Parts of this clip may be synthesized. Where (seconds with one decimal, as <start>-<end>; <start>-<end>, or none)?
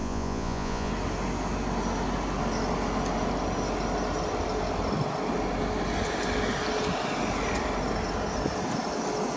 0.0-0.9